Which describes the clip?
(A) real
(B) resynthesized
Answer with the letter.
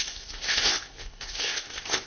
B